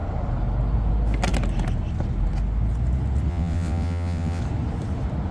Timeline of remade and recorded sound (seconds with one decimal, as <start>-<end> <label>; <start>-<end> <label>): 0.0-3.3 recorded; 3.3-4.4 remade; 4.4-5.3 recorded